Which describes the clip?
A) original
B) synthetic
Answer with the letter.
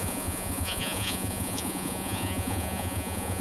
B